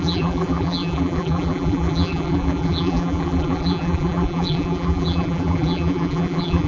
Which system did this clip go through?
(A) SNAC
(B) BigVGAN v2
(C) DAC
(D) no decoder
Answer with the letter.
B